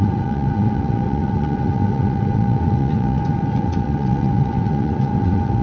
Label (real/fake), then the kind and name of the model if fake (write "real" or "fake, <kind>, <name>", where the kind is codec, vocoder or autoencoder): fake, vocoder, WaveNeXt